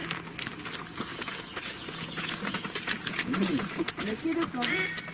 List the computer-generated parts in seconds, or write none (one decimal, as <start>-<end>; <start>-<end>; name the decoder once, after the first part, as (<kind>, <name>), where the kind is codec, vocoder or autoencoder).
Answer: 1.1-4.2 (vocoder, Vocos)